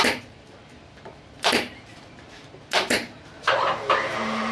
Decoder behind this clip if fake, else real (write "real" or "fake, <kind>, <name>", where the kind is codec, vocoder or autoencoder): fake, vocoder, BigVGAN v2